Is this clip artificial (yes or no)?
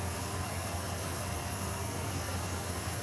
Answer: yes